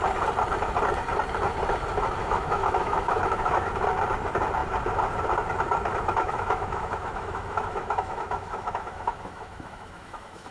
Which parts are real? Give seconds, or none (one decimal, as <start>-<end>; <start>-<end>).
0.0-2.2; 3.7-5.9